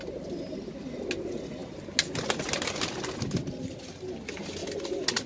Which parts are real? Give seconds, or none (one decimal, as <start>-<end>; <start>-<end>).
0.0-5.3